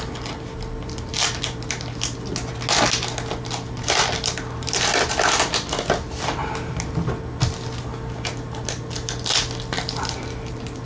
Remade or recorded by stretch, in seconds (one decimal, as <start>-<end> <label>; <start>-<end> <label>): 0.0-10.8 recorded